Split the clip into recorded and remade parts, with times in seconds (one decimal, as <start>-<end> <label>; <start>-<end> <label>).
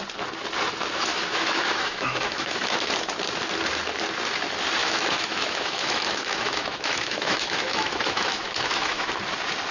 0.0-1.1 recorded; 1.1-2.9 remade; 2.9-4.8 recorded; 4.8-9.1 remade; 9.1-9.7 recorded